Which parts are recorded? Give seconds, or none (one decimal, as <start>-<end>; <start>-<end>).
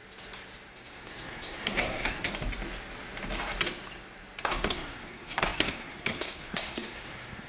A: 0.0-0.7; 2.3-4.4